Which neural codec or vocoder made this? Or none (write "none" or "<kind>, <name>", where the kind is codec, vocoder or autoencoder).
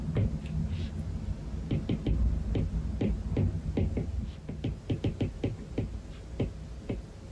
none